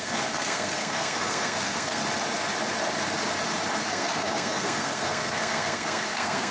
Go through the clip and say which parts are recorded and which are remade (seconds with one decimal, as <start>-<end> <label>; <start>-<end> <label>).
0.0-2.0 remade; 2.0-3.9 recorded; 3.9-6.5 remade